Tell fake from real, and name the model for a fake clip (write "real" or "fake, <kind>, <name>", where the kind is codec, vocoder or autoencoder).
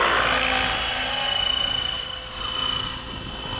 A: real